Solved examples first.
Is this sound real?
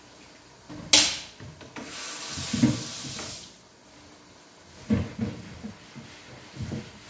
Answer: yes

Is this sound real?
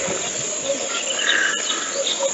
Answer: yes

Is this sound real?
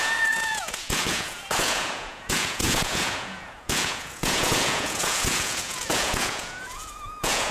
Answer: no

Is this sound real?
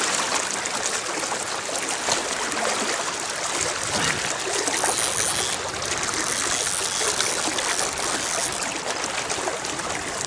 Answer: yes